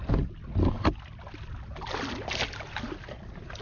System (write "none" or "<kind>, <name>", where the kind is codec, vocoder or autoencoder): none